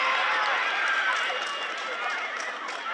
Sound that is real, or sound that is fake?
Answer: real